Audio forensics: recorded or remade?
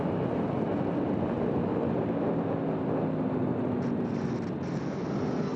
recorded